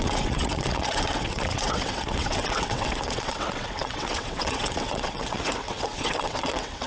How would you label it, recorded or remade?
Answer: remade